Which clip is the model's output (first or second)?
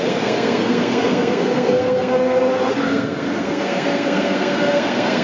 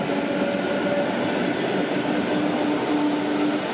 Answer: first